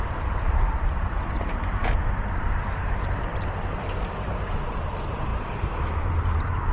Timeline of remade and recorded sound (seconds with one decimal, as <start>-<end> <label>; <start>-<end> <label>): 0.0-1.8 remade; 1.8-2.3 recorded; 2.3-6.7 remade